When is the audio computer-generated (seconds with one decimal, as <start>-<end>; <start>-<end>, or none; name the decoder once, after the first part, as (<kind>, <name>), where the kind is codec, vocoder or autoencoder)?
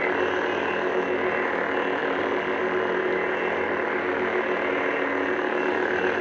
none